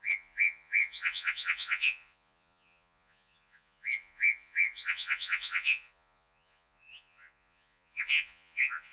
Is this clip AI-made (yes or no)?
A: yes